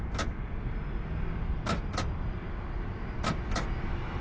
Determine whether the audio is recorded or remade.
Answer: recorded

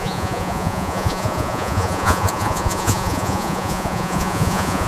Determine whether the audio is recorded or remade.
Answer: remade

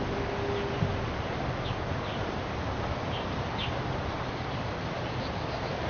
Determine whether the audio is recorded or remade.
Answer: recorded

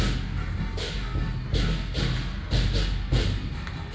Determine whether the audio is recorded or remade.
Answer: recorded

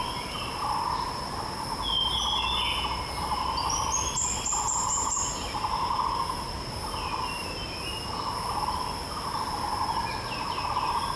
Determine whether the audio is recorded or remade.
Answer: recorded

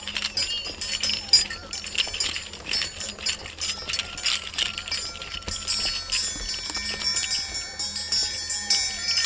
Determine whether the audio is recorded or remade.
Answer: recorded